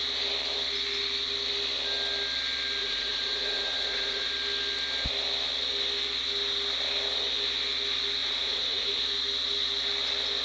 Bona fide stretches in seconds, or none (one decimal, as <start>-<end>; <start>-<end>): 0.0-2.8; 4.3-8.2; 8.9-10.4